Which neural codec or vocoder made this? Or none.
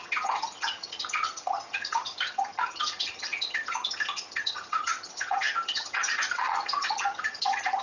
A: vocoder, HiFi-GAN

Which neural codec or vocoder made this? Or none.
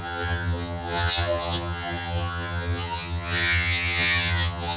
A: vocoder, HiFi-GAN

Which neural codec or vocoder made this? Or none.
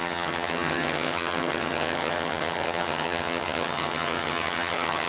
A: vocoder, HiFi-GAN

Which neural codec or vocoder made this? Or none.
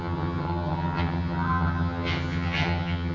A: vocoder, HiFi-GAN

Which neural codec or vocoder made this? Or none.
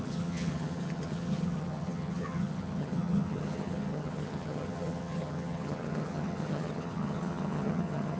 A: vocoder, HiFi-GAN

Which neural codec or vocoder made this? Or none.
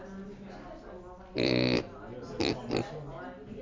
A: none